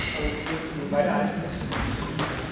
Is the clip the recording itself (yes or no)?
yes